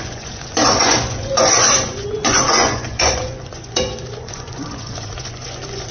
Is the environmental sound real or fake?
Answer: fake